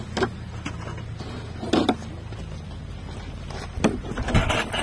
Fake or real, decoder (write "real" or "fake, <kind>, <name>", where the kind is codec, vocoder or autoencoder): real